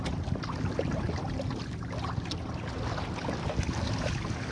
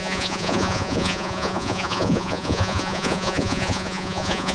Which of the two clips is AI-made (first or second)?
second